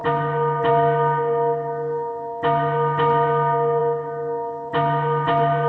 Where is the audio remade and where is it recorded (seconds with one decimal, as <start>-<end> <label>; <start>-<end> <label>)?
0.0-5.7 recorded